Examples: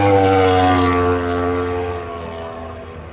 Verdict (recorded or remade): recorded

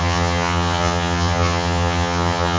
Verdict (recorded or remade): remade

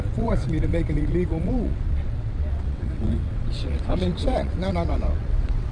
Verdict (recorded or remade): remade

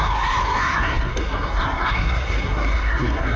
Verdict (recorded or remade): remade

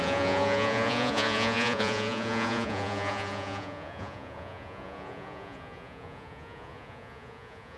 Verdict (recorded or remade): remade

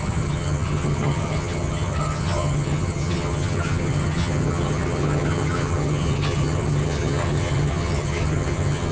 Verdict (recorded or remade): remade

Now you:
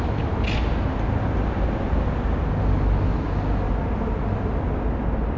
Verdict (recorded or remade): recorded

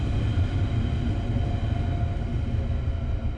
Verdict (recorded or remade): recorded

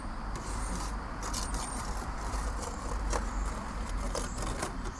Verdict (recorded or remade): remade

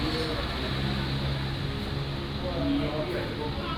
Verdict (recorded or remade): recorded